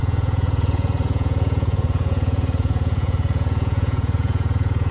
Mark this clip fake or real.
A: fake